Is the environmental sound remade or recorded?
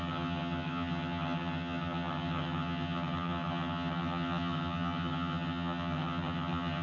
remade